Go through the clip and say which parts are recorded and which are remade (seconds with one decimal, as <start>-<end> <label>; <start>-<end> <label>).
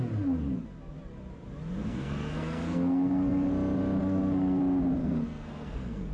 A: 0.0-1.8 recorded; 1.8-3.5 remade; 3.5-4.0 recorded; 4.0-4.6 remade; 4.6-5.0 recorded; 5.0-6.1 remade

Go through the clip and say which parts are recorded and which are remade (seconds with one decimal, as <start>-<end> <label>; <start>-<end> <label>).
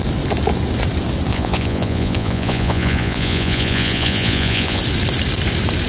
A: 0.0-1.3 recorded; 1.3-4.8 remade; 4.8-5.9 recorded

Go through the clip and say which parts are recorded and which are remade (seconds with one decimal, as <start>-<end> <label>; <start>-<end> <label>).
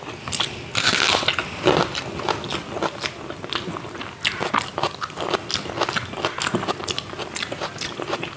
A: 0.0-8.4 recorded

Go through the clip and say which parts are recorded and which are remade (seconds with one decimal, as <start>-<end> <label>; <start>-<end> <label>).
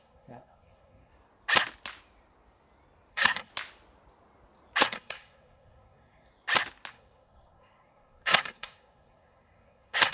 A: 0.0-1.1 remade; 1.1-3.1 recorded; 3.1-3.5 remade; 3.5-4.8 recorded; 4.8-6.3 remade; 6.3-6.9 recorded; 6.9-10.1 remade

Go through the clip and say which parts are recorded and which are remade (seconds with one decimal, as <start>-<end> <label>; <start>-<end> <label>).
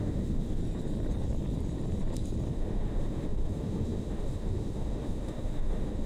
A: 0.0-0.6 remade; 0.6-2.5 recorded; 2.5-6.1 remade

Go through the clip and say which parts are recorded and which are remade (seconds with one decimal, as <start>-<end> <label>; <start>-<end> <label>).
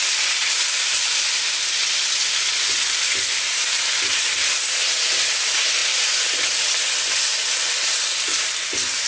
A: 0.0-9.1 remade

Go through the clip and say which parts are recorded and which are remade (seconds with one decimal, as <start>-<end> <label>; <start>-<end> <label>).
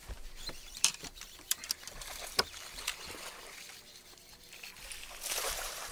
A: 0.0-2.9 remade; 2.9-5.3 recorded; 5.3-5.9 remade